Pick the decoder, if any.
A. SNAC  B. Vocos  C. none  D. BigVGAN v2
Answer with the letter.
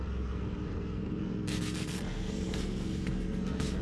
A